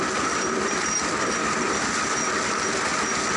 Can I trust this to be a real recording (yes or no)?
yes